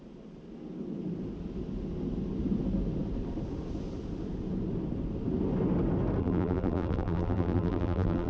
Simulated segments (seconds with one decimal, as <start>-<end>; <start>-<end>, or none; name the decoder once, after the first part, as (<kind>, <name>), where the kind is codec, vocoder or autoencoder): 6.2-8.3 (vocoder, BigVGAN v2)